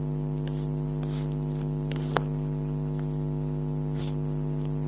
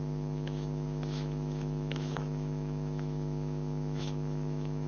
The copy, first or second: second